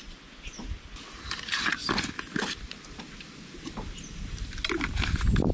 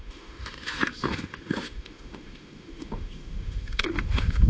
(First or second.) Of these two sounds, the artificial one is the second